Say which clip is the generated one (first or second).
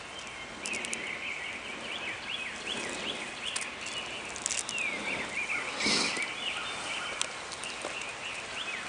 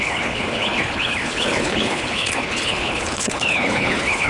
second